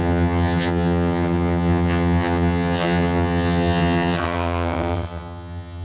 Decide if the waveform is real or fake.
fake